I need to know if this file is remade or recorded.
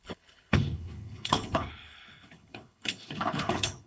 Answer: remade